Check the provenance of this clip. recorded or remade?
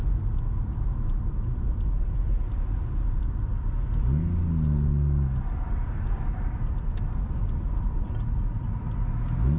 recorded